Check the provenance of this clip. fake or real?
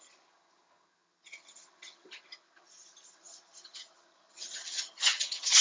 fake